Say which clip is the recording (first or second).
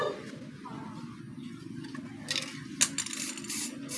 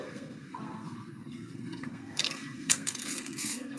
first